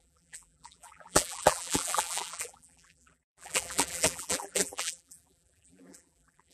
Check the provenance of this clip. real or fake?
fake